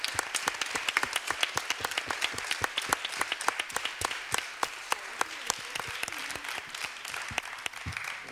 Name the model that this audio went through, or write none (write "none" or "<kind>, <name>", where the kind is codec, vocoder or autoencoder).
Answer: vocoder, BigVGAN v2